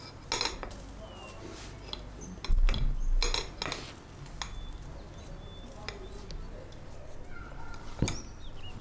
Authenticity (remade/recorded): recorded